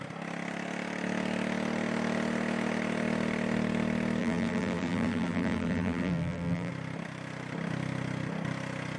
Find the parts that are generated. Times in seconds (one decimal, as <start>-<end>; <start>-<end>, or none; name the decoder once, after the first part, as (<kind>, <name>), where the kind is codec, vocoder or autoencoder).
4.2-6.7 (vocoder, BigVGAN v2)